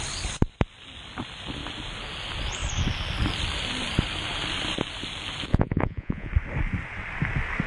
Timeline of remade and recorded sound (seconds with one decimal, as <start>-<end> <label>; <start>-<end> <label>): 0.0-5.5 recorded; 5.5-6.3 remade; 6.3-7.7 recorded